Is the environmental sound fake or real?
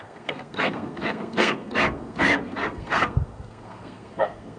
fake